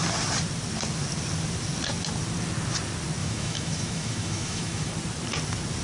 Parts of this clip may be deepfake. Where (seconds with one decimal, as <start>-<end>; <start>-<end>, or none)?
3.2-4.9